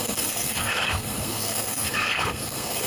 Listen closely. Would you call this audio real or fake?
fake